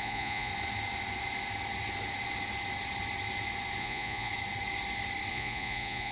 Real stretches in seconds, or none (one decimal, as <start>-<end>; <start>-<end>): 0.5-3.8; 4.3-5.3